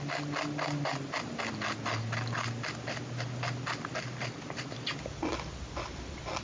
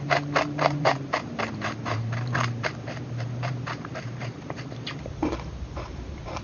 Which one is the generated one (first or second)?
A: second